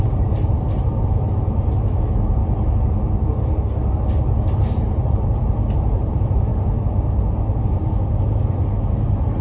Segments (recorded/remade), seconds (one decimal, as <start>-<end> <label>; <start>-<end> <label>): 0.0-2.4 remade; 2.4-4.6 recorded; 4.6-6.5 remade; 6.5-7.3 recorded; 7.3-9.4 remade